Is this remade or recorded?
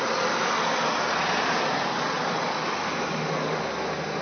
recorded